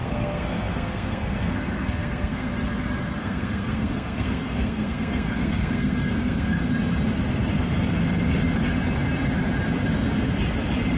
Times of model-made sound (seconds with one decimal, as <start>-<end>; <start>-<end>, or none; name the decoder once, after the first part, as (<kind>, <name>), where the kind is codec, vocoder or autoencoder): 0.0-2.5 (codec, SNAC); 3.2-6.6